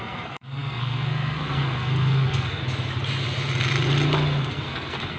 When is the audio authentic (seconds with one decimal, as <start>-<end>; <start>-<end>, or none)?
2.6-4.5